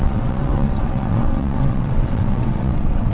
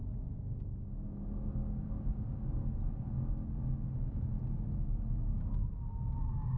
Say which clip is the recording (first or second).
second